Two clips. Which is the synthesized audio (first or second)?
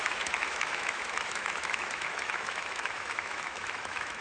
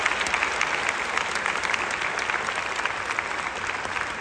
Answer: first